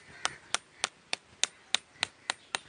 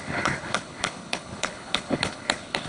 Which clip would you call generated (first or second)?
second